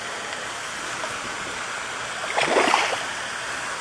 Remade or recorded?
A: recorded